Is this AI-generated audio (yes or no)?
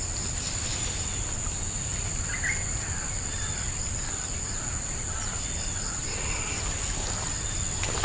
no